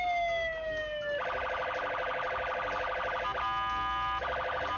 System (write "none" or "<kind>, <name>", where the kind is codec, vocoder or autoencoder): none